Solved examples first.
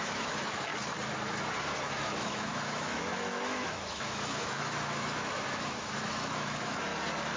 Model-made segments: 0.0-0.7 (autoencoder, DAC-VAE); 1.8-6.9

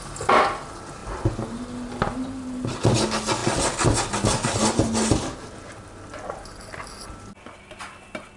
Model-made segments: none

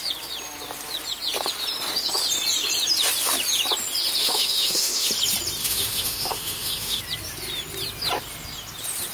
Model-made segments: 4.2-5.1 (autoencoder, DAC-VAE); 5.6-7.0